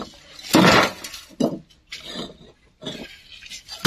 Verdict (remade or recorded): recorded